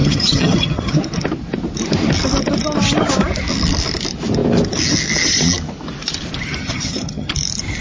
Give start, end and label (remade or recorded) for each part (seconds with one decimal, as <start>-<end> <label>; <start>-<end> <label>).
0.0-0.9 remade; 0.9-6.6 recorded; 6.6-7.3 remade; 7.3-7.8 recorded

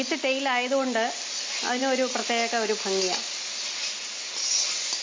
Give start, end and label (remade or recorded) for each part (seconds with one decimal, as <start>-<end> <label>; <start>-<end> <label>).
0.0-5.0 recorded

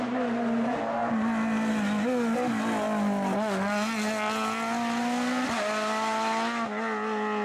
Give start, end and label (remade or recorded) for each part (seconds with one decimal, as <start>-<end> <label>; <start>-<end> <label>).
0.0-7.4 recorded